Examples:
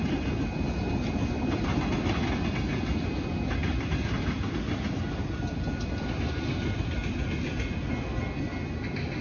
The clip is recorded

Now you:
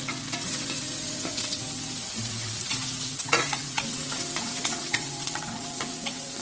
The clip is remade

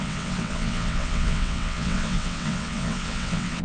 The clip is remade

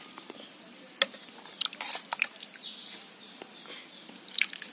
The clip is recorded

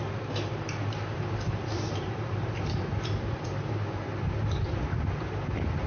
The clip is recorded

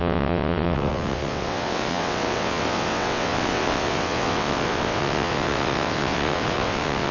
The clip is remade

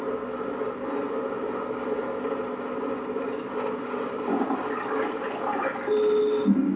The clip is recorded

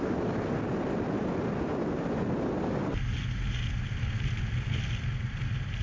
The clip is recorded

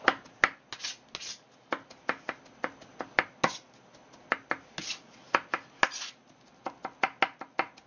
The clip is recorded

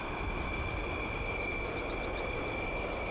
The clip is recorded